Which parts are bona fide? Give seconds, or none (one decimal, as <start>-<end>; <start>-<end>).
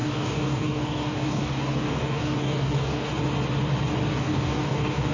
3.1-4.1